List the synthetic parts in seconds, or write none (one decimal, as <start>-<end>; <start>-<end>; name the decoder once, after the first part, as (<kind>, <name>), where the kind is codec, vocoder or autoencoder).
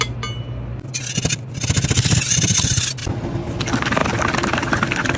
none